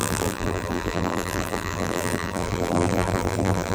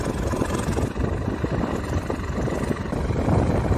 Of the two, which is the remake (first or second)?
first